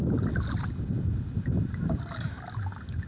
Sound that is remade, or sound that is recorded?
recorded